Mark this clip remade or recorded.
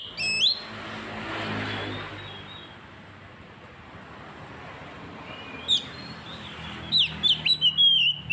recorded